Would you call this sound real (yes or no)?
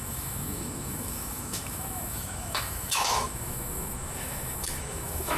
no